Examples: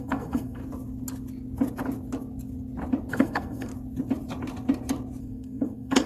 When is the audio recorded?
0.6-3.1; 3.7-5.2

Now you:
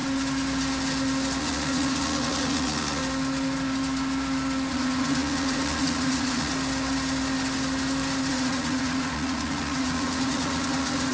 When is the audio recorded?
0.0-1.4; 3.0-4.7; 6.5-8.3

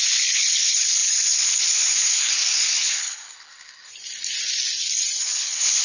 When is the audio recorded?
3.9-5.2

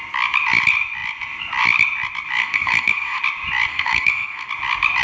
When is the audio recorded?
0.0-2.4; 3.2-3.7; 4.5-5.0

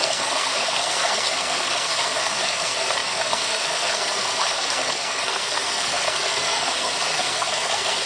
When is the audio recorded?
none